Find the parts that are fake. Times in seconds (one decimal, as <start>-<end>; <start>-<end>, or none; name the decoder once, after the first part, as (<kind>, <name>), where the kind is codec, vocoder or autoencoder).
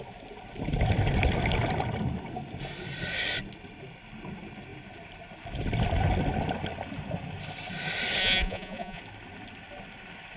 8.2-9.0 (vocoder, Vocos)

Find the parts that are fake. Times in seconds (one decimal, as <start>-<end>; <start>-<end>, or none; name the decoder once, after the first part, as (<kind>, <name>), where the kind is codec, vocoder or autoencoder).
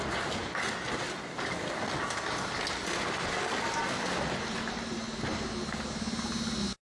none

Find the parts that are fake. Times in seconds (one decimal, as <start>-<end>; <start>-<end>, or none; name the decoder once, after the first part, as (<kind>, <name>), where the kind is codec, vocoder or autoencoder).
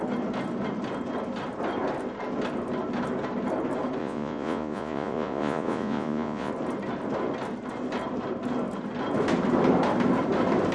4.0-6.5 (vocoder, Vocos)